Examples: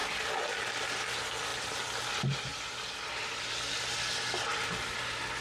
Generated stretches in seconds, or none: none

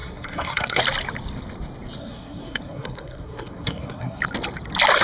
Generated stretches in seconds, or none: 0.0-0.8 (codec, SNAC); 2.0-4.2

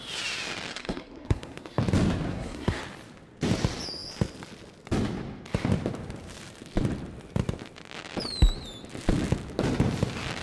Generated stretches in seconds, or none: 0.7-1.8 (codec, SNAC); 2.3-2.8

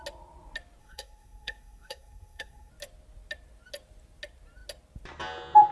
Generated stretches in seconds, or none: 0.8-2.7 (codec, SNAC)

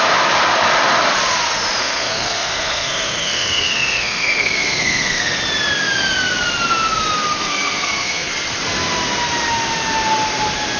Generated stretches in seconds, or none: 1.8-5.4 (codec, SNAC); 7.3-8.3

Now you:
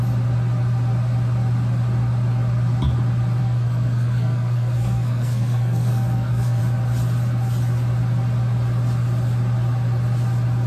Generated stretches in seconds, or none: 3.4-6.6 (codec, SNAC)

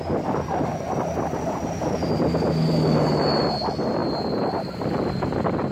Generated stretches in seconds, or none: none

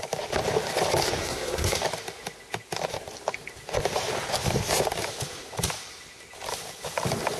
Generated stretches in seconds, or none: 1.2-1.8 (codec, SNAC)